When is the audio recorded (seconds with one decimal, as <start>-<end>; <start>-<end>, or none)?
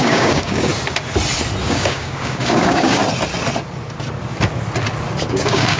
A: 0.7-1.6; 3.0-5.3